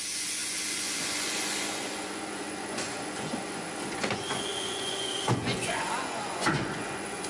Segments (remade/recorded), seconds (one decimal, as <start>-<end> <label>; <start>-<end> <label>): 0.0-7.3 remade